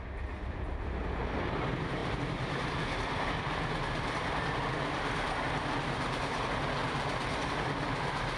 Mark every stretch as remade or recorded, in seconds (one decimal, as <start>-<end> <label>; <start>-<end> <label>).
0.0-8.4 recorded